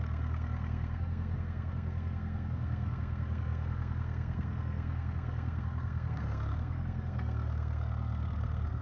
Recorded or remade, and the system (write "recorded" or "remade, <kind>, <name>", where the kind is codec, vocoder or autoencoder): remade, codec, SNAC